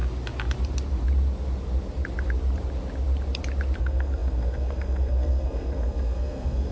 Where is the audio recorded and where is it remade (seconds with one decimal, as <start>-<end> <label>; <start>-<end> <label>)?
0.0-3.8 recorded; 3.8-6.7 remade